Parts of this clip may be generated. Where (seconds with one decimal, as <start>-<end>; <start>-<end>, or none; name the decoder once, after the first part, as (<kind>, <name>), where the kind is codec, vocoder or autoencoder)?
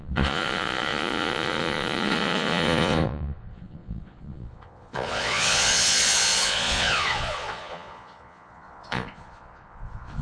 0.0-10.2 (vocoder, Vocos)